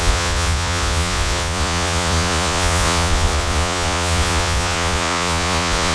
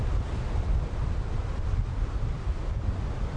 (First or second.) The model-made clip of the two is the first